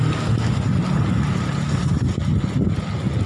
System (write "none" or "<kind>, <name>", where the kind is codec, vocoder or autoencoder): none